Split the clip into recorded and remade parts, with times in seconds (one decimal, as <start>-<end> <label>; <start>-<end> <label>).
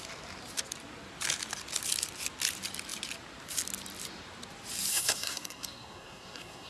0.0-4.9 recorded; 4.9-6.7 remade